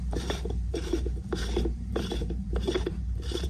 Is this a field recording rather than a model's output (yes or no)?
no